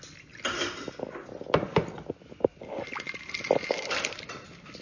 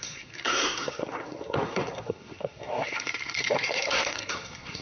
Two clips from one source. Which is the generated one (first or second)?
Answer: second